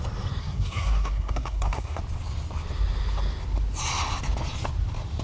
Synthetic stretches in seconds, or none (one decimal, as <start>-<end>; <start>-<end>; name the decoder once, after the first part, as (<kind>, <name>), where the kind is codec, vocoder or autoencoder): 0.4-2.0 (codec, SNAC)